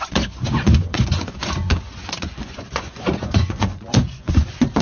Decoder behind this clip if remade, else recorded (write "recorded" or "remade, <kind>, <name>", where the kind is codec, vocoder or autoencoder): remade, vocoder, Vocos